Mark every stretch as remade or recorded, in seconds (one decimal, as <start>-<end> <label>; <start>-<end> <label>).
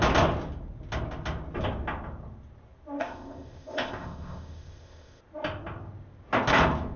0.0-3.0 recorded; 3.0-5.2 remade; 5.2-7.0 recorded